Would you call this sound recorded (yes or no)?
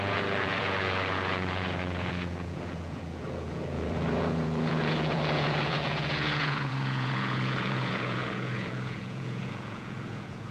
no